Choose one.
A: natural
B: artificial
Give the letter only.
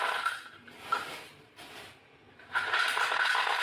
B